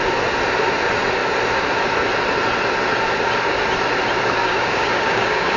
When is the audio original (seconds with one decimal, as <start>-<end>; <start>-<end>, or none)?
0.0-4.4